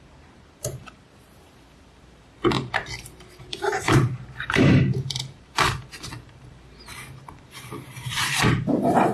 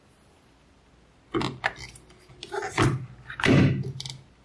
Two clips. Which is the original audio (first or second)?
second